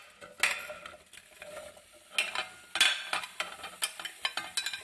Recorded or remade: recorded